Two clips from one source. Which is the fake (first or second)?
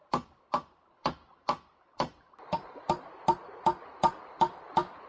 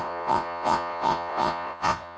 second